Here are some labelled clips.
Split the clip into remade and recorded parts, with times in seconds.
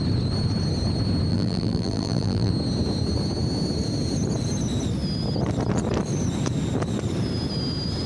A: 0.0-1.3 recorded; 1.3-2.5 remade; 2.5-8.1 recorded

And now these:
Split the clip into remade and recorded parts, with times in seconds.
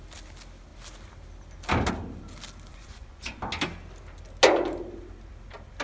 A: 0.0-2.7 recorded; 2.7-3.4 remade; 3.4-5.8 recorded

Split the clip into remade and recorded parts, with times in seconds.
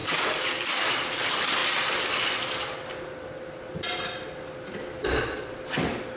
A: 0.0-6.2 recorded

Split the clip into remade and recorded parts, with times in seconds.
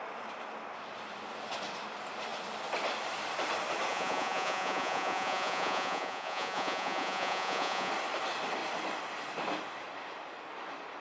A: 0.0-3.9 recorded; 3.9-7.9 remade; 7.9-11.0 recorded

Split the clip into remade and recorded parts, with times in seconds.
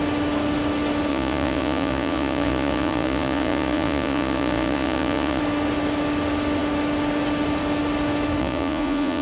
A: 0.0-1.1 recorded; 1.1-5.4 remade; 5.4-8.4 recorded; 8.4-9.2 remade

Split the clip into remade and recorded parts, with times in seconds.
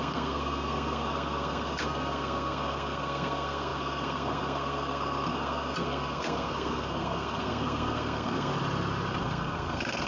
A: 0.0-8.5 remade; 8.5-9.2 recorded; 9.2-10.1 remade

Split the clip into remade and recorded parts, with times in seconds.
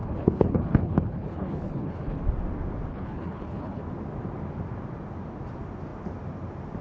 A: 0.0-2.2 remade; 2.2-2.9 recorded; 2.9-3.8 remade; 3.8-6.8 recorded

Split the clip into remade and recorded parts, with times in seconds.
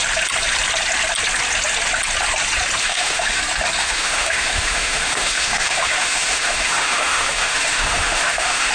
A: 0.0-2.8 recorded; 2.8-3.4 remade; 3.4-3.8 recorded; 3.8-8.7 remade